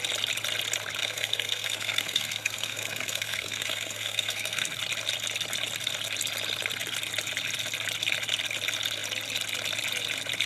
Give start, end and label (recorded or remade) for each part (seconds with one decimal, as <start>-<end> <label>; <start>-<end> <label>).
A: 0.0-1.0 recorded; 1.0-4.8 remade; 4.8-10.5 recorded